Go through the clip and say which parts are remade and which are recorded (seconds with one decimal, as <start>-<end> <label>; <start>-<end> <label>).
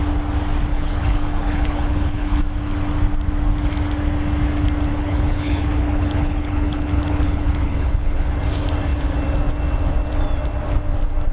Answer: 0.0-0.7 recorded; 0.7-2.4 remade; 2.4-4.9 recorded; 4.9-8.3 remade; 8.3-11.3 recorded